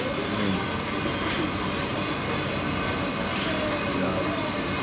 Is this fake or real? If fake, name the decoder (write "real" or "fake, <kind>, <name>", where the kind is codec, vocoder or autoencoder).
real